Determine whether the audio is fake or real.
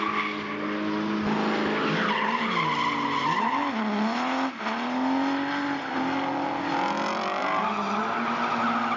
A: real